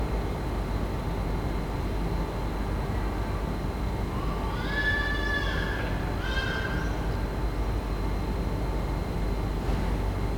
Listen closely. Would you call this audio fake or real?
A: real